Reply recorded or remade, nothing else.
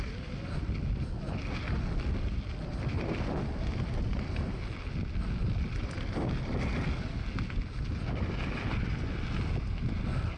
recorded